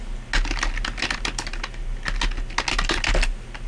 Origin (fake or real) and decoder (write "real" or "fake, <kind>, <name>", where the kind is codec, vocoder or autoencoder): real